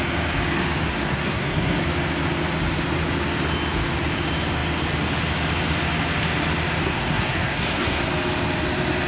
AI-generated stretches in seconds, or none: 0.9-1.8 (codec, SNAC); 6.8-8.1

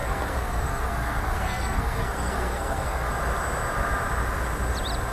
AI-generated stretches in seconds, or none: 0.0-3.1 (codec, SNAC)

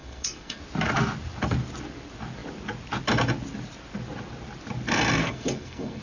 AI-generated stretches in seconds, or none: 0.0-0.6 (codec, SNAC); 5.2-6.0

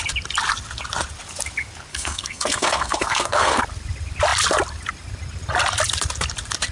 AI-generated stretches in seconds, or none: 1.9-3.6 (codec, SNAC)